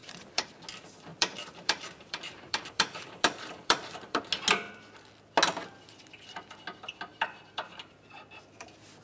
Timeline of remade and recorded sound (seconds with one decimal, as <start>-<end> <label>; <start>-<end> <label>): 0.0-0.5 remade; 0.5-1.1 recorded; 1.1-4.2 remade; 4.2-7.1 recorded; 7.1-8.1 remade; 8.1-9.0 recorded